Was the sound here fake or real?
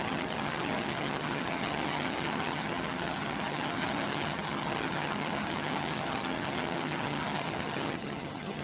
fake